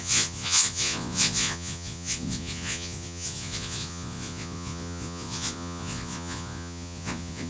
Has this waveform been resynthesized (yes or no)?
yes